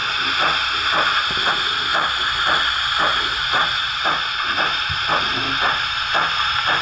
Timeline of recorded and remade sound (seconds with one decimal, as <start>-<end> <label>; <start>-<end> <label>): 0.0-3.1 recorded; 3.1-4.8 remade; 4.8-6.8 recorded